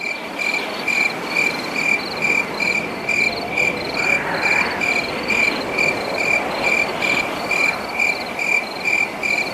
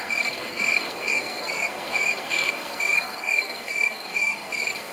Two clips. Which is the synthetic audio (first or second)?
second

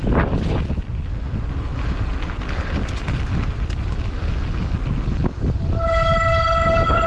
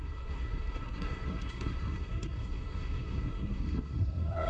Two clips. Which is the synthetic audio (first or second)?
second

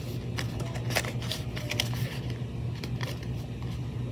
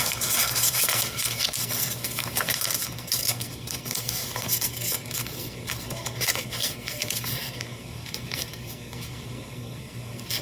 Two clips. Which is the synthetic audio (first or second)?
second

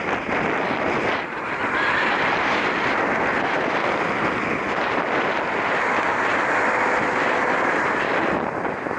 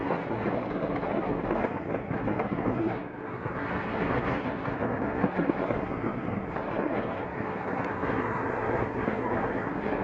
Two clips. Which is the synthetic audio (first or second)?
second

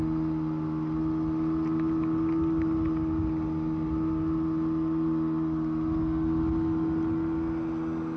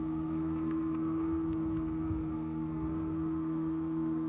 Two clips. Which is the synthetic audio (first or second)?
second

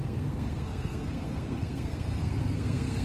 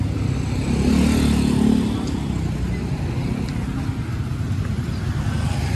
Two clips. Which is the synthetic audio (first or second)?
first